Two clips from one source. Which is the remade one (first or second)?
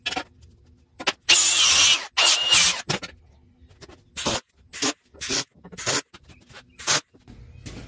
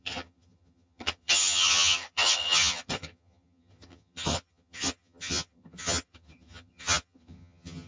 second